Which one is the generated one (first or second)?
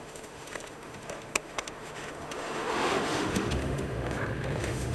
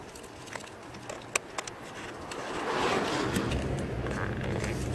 first